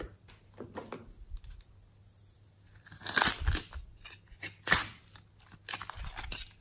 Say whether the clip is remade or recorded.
recorded